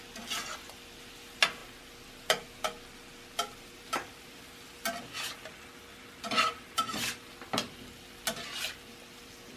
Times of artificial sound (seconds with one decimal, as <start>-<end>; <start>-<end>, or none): none